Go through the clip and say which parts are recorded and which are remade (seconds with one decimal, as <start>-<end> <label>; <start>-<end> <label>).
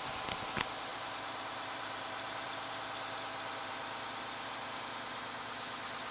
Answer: 0.0-0.9 recorded; 0.9-2.7 remade; 2.7-3.6 recorded; 3.6-4.8 remade; 4.8-6.1 recorded